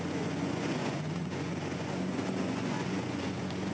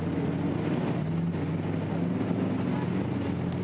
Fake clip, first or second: first